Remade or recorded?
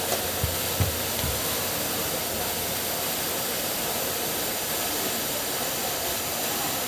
recorded